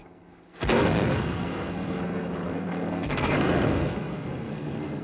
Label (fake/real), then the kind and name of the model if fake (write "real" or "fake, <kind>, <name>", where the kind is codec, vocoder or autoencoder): fake, codec, SNAC